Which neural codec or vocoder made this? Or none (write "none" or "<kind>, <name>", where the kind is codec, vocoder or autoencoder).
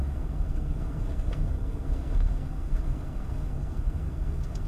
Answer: codec, SNAC